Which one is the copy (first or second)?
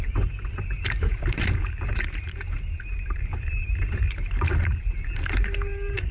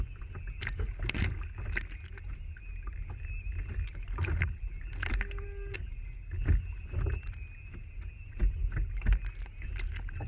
first